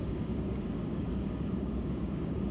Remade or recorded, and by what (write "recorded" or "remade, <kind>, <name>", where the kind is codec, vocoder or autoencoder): remade, codec, DAC